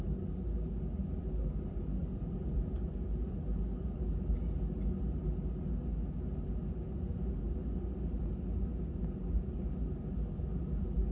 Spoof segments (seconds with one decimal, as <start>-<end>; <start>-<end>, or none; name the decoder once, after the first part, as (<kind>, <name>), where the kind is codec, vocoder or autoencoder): none